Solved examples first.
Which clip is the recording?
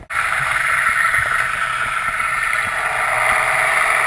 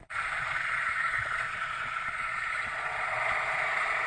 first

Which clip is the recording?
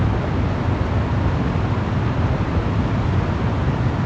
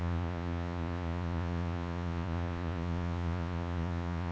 first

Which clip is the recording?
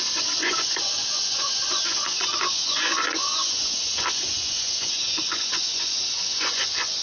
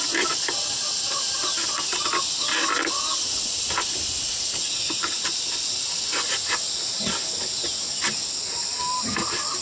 second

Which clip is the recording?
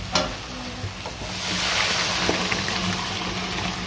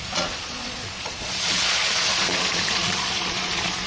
first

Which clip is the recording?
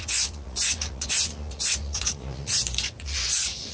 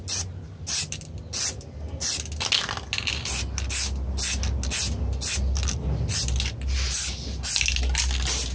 second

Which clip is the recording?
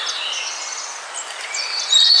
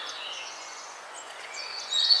first